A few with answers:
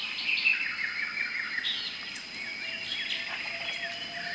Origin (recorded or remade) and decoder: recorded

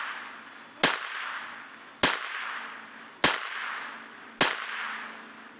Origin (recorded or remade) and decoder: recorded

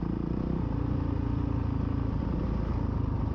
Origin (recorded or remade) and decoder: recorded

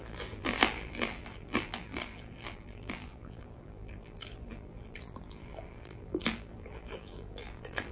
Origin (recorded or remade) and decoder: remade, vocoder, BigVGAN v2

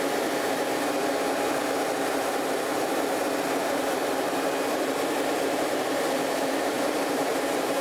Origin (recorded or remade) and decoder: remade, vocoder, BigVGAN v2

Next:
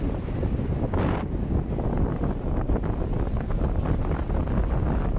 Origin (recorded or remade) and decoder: recorded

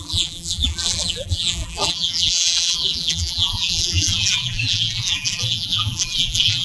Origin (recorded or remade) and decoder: remade, vocoder, BigVGAN v2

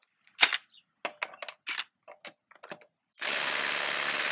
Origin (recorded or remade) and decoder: recorded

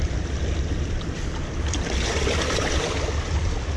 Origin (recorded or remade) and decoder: recorded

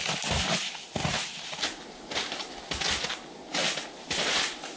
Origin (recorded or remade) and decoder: recorded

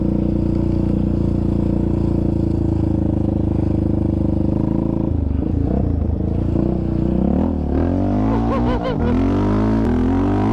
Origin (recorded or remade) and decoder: recorded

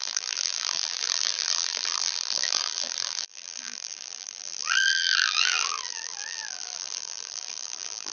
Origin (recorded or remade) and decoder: remade, vocoder, BigVGAN v2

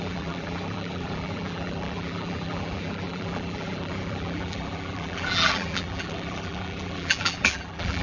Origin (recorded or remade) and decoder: remade, vocoder, BigVGAN v2